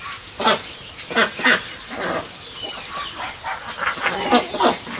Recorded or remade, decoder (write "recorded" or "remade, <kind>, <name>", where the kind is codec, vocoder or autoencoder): recorded